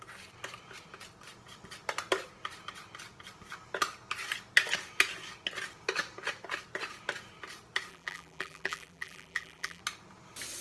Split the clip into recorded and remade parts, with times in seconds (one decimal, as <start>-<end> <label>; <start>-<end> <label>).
0.0-7.9 recorded; 7.9-9.8 remade; 9.8-10.6 recorded